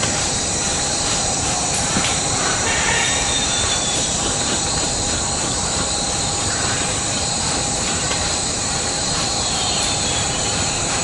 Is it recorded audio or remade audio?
remade